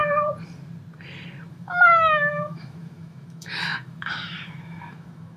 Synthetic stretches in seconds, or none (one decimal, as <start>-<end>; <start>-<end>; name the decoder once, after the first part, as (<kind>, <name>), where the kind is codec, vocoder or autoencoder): 1.5-5.4 (autoencoder, DAC-VAE)